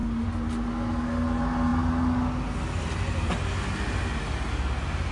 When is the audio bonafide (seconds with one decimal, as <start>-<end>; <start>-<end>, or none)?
0.0-5.1